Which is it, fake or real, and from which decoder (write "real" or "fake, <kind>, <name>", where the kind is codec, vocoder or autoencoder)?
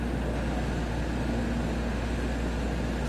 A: real